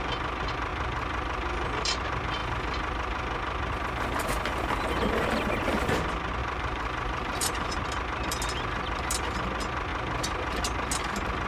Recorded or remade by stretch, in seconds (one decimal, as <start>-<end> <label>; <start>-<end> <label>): 0.0-6.4 recorded; 6.4-7.8 remade; 7.8-11.5 recorded